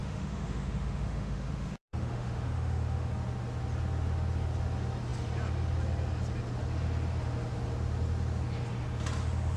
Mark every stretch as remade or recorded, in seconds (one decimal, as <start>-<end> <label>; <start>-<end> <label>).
0.0-3.1 remade; 3.1-9.6 recorded